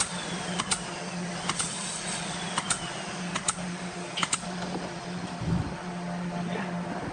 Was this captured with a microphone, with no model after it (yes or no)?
yes